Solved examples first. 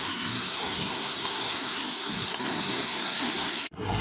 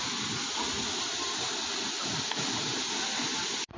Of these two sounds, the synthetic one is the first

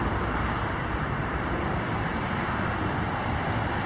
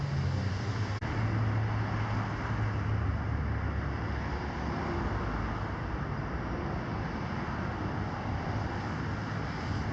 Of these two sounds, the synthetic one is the first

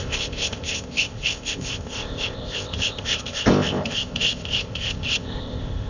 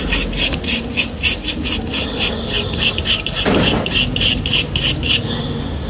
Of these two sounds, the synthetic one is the first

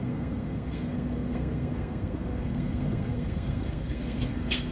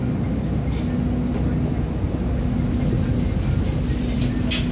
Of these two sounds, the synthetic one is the first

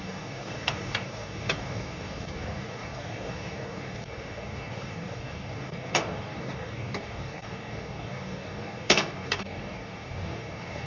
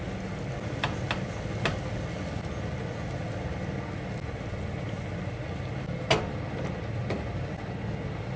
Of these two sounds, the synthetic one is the first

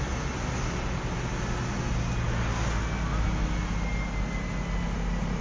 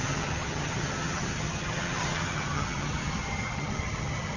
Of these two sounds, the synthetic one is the second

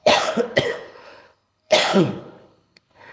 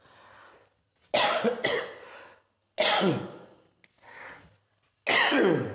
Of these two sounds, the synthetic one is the first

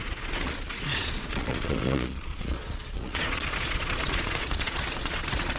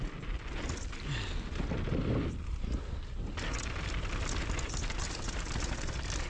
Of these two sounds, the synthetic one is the first